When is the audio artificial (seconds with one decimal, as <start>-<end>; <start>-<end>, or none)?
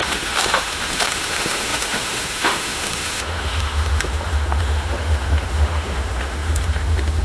0.0-7.2